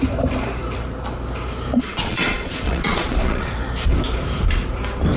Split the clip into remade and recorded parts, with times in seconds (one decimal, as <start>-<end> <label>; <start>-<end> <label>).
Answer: 0.0-1.7 recorded; 1.7-3.5 remade; 3.5-5.2 recorded